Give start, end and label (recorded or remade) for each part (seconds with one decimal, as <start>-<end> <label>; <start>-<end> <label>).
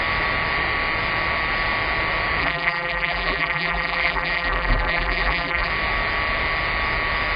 0.0-2.4 recorded; 2.4-5.7 remade; 5.7-7.4 recorded